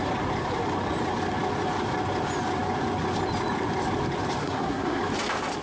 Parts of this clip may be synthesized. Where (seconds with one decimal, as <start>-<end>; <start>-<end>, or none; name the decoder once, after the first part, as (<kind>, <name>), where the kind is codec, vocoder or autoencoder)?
4.4-5.0 (codec, SNAC)